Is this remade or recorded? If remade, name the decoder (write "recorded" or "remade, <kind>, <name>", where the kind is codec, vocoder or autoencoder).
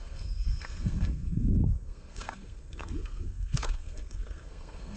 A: remade, codec, SNAC